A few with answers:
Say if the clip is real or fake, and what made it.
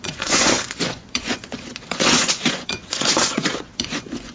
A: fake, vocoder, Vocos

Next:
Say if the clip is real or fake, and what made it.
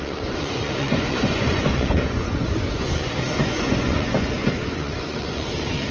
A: fake, vocoder, Vocos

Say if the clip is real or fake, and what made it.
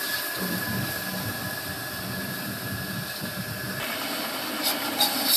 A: real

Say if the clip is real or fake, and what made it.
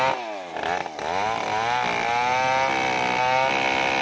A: real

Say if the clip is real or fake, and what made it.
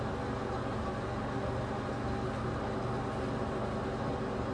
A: real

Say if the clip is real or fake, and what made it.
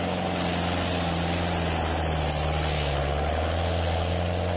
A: real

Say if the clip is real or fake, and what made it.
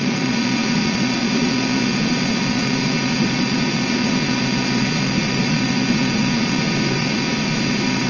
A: fake, vocoder, Vocos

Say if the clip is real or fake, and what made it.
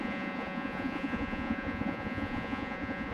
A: fake, vocoder, Vocos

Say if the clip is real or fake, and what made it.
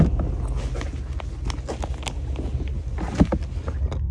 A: real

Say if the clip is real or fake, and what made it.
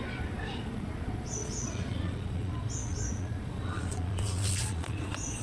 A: fake, vocoder, Vocos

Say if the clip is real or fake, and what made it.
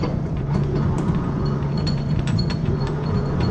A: fake, vocoder, Vocos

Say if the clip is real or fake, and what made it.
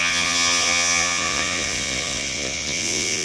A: fake, vocoder, Vocos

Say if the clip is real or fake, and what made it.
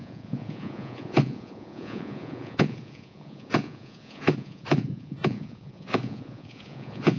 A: fake, vocoder, Vocos